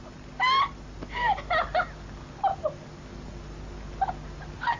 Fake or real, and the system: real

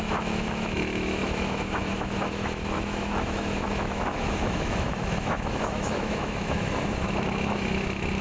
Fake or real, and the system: fake, autoencoder, DAC-VAE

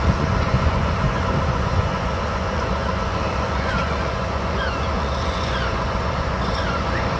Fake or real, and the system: fake, vocoder, Vocos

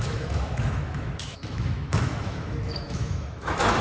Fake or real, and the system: fake, autoencoder, DAC-VAE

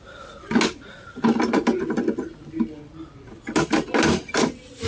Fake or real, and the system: real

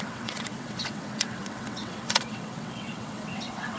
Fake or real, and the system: fake, vocoder, WaveNeXt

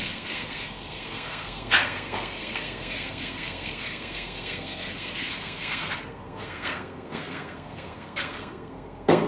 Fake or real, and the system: fake, codec, SNAC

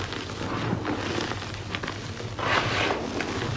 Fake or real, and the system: real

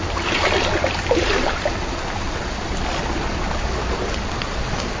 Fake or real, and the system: real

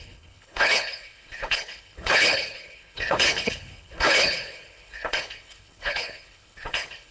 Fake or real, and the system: fake, codec, HILCodec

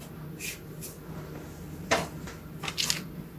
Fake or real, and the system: real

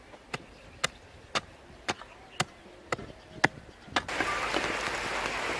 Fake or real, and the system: real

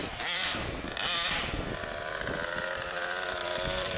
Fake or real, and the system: fake, vocoder, BigVGAN v2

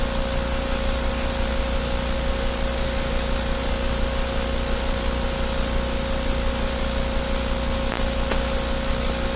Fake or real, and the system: real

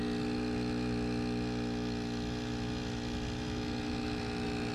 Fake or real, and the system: real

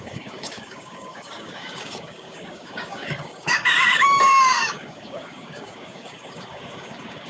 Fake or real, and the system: fake, codec, DAC